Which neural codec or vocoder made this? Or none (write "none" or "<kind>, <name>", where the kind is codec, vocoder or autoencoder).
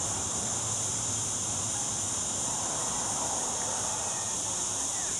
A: vocoder, BigVGAN v2